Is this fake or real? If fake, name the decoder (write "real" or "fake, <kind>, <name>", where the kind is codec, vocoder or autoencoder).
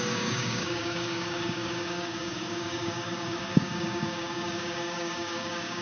fake, codec, DAC